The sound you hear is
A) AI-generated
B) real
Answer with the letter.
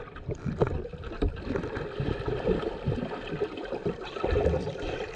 A